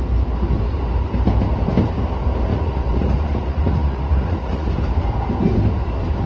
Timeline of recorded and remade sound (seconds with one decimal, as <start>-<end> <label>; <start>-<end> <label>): 0.0-2.5 recorded; 2.5-4.7 remade; 4.7-6.3 recorded